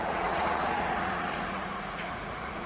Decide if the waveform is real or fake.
fake